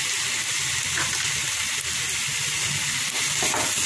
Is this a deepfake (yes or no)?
no